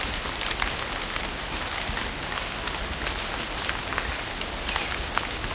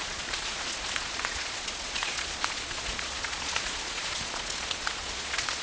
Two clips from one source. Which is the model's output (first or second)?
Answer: second